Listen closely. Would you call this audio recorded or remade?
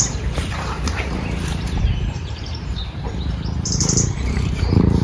remade